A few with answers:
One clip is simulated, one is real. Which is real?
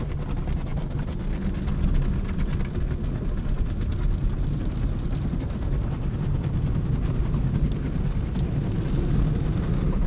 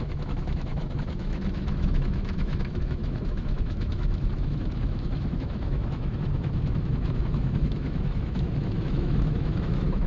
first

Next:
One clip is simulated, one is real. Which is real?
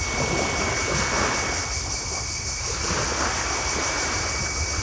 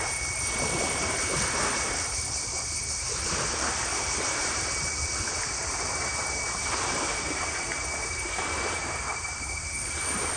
first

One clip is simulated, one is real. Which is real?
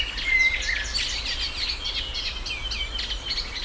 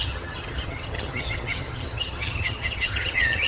first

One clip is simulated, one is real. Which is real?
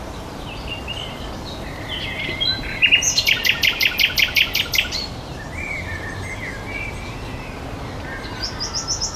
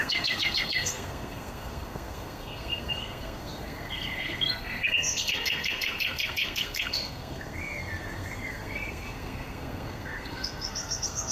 first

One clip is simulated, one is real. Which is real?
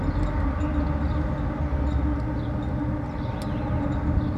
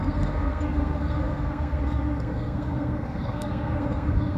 first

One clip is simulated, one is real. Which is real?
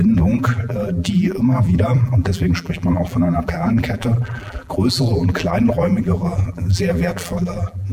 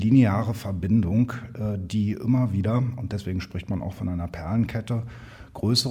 second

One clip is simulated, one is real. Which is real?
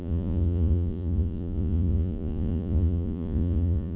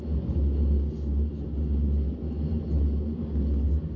second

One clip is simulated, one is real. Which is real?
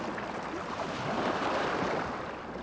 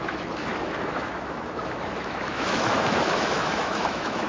first